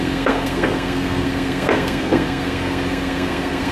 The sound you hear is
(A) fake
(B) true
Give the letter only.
A